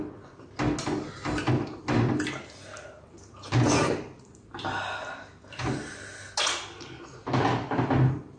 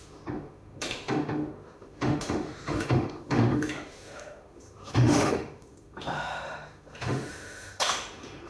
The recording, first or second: first